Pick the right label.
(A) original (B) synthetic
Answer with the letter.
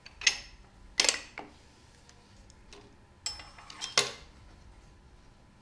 A